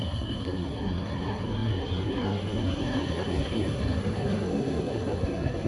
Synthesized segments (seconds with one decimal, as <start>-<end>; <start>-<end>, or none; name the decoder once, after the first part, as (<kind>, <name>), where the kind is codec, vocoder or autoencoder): 0.0-5.7 (codec, SNAC)